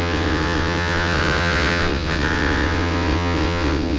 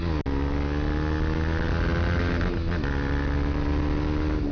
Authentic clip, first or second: second